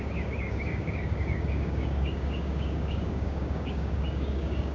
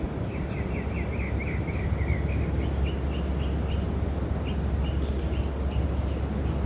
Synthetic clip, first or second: first